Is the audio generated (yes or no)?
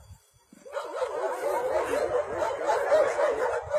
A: no